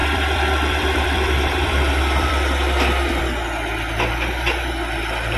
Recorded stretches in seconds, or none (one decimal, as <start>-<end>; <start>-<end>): 3.2-5.4